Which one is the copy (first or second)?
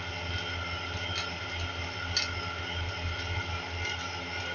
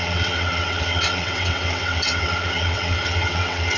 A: second